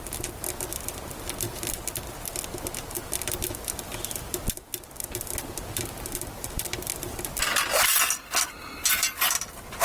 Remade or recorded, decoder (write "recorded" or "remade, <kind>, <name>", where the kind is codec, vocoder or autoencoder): recorded